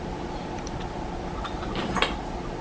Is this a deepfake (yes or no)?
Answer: no